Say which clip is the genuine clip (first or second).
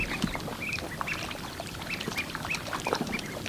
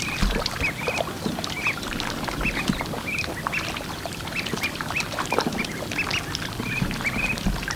second